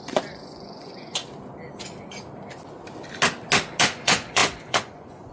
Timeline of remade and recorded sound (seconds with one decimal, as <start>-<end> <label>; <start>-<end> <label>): 0.0-1.2 remade; 1.2-3.8 recorded; 3.8-5.3 remade